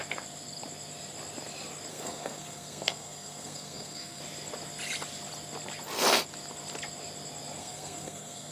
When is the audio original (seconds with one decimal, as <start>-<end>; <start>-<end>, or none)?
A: 0.0-1.9; 4.2-7.6